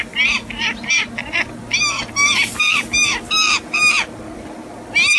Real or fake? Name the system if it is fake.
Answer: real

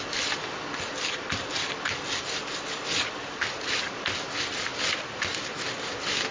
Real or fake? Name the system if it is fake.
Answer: real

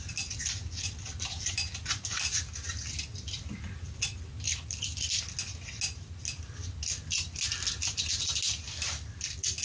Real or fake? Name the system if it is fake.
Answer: real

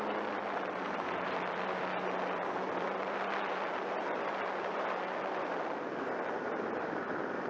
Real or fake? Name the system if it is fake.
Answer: fake, vocoder, BigVGAN v2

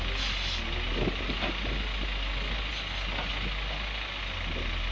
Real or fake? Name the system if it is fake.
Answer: real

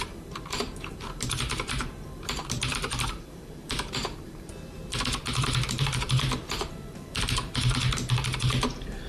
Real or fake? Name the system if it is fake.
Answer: fake, vocoder, BigVGAN v2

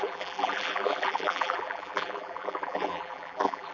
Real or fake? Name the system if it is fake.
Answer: fake, vocoder, BigVGAN v2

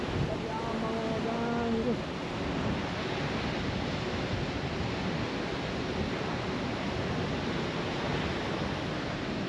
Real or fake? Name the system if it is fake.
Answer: real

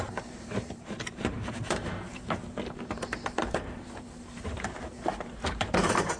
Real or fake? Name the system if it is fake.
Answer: fake, vocoder, BigVGAN v2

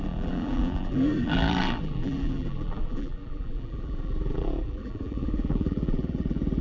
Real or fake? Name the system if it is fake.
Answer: fake, vocoder, BigVGAN v2